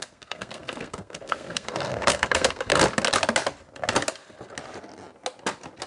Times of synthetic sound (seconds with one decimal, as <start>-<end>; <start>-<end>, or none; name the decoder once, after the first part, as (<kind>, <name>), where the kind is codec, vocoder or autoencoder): 0.0-2.7 (codec, SNAC)